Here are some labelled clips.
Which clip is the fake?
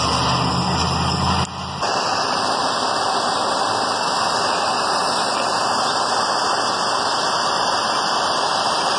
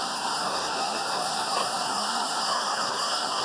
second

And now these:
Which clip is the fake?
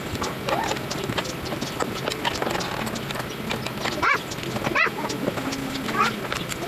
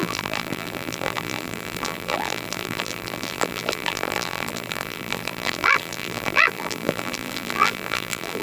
second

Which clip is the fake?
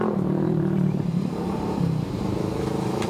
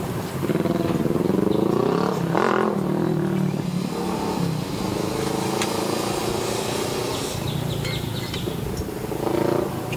first